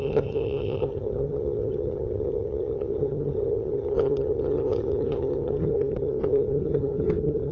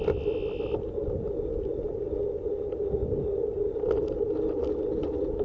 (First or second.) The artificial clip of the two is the first